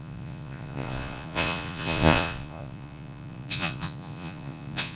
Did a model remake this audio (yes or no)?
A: yes